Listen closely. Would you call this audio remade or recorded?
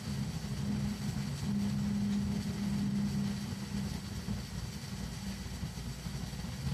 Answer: recorded